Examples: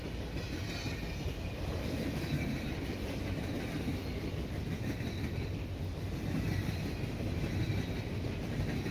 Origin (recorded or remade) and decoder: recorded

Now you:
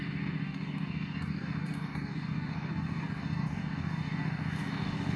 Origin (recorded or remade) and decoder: remade, codec, DAC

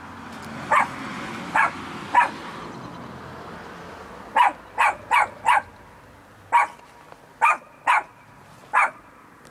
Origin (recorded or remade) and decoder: recorded